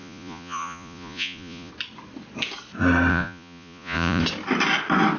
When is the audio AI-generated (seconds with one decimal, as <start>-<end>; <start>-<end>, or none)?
0.0-1.7; 3.1-4.2